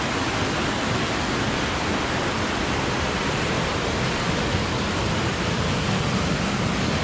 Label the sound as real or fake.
real